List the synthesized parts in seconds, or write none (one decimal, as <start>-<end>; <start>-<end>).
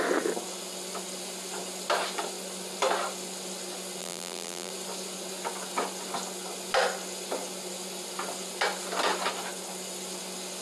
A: 4.0-4.7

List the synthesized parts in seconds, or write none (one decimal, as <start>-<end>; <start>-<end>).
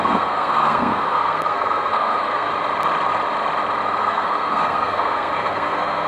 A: 0.0-2.5; 4.0-6.1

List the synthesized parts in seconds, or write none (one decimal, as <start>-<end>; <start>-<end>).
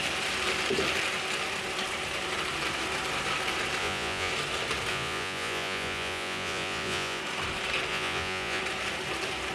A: 3.8-4.3; 4.9-7.2; 7.9-8.6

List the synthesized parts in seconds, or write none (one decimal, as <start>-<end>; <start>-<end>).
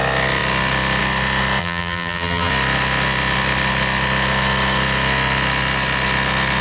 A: 1.6-2.5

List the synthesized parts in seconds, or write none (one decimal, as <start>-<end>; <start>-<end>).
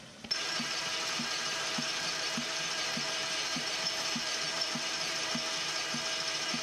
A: 0.0-0.9; 1.5-5.3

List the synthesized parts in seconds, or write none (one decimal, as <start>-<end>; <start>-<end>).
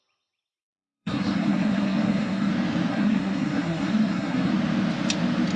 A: 0.7-2.5; 2.9-4.5